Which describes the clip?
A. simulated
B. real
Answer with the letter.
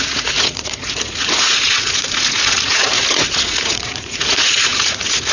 A